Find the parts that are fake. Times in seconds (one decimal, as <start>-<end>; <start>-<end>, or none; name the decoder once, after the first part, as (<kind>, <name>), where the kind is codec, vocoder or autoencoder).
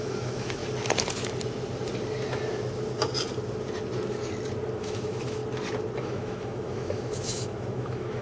0.0-0.6 (autoencoder, DAC-VAE); 4.8-5.4; 6.0-8.2